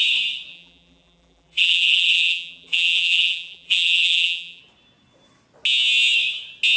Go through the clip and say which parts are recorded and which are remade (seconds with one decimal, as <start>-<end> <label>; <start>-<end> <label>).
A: 0.0-0.5 recorded; 0.5-4.6 remade; 4.6-6.8 recorded